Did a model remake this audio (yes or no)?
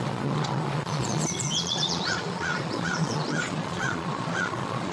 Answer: yes